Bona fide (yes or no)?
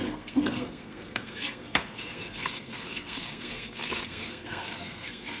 no